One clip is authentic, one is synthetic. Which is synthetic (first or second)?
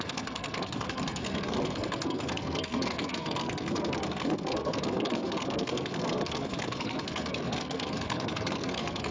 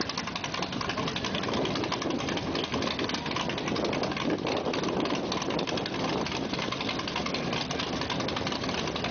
first